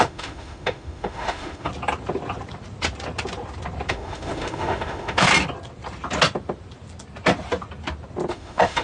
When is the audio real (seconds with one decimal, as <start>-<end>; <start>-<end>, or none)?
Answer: 1.7-3.9; 5.3-8.3